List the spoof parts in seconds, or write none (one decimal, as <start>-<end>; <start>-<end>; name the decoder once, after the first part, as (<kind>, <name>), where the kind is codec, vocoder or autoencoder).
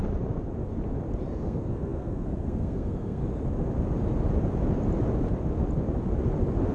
1.4-3.2 (codec, SNAC)